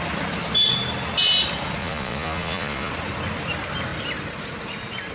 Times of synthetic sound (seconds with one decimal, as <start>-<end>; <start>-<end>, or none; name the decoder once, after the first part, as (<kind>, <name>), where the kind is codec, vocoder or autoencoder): 1.8-2.9 (vocoder, Vocos)